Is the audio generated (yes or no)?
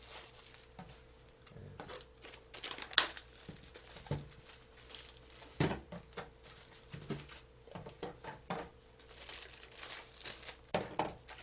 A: no